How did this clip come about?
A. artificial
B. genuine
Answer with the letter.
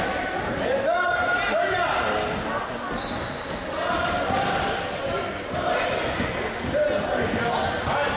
B